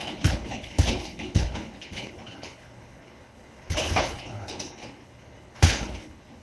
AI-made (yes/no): yes